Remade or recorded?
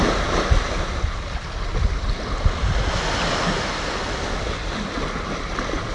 recorded